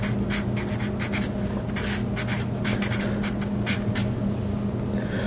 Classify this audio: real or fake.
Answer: real